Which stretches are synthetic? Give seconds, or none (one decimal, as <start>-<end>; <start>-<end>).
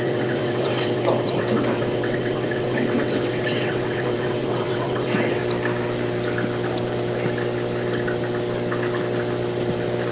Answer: 0.0-5.4